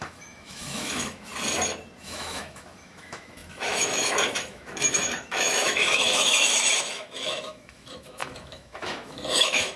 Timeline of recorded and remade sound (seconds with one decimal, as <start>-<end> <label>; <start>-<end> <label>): 0.0-1.3 remade; 1.3-2.0 recorded; 2.0-9.8 remade